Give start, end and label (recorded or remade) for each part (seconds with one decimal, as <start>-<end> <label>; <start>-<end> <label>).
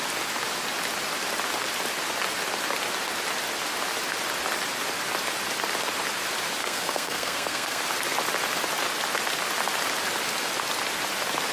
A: 0.0-6.6 recorded; 6.6-7.8 remade; 7.8-11.5 recorded